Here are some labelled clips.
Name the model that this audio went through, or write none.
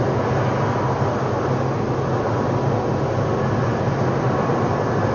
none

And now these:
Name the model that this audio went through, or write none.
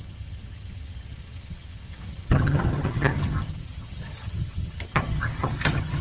vocoder, HiFi-GAN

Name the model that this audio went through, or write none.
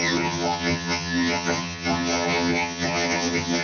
vocoder, HiFi-GAN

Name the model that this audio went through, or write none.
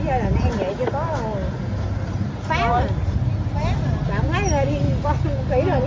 none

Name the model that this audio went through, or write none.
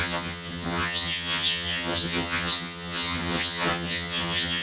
vocoder, HiFi-GAN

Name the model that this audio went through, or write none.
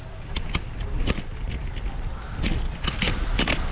none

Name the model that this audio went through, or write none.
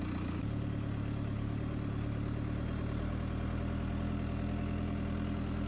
none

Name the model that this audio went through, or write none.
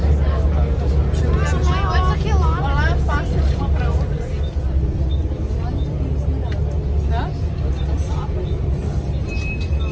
none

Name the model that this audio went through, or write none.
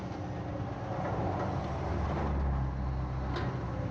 none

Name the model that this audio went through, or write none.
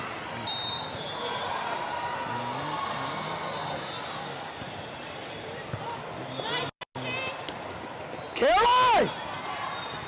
none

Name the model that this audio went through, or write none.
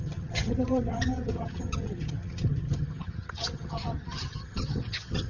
vocoder, HiFi-GAN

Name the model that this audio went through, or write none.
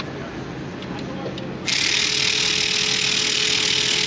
none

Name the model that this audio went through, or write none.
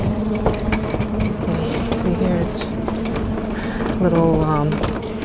none